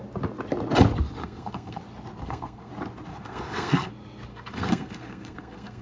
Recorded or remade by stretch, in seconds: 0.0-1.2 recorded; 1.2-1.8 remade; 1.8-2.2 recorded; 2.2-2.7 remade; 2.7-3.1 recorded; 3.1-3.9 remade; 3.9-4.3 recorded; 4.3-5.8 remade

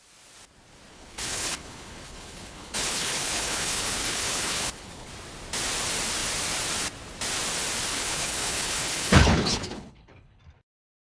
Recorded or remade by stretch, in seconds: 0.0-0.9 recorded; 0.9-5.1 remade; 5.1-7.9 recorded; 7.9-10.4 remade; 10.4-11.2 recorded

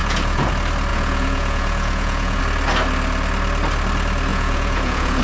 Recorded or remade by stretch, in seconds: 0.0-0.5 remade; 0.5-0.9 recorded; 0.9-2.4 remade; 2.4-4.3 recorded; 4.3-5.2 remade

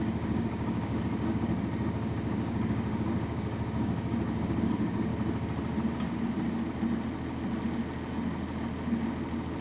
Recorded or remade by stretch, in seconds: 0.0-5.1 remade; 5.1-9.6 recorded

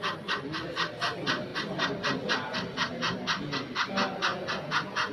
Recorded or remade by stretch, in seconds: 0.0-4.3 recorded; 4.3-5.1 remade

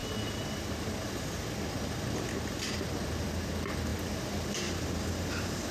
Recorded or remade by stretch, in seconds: 0.0-5.7 recorded